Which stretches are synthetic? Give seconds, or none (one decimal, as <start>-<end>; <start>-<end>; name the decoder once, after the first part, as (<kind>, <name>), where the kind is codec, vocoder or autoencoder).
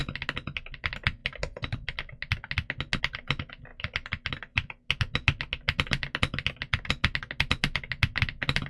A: none